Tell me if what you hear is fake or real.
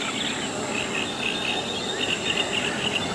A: real